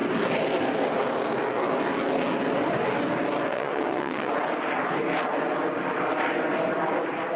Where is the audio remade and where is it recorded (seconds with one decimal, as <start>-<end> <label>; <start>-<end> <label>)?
0.0-3.5 recorded; 3.5-4.3 remade; 4.3-7.4 recorded